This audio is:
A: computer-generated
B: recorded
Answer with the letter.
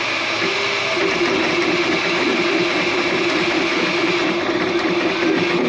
B